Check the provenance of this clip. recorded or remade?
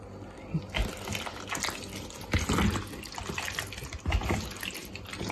recorded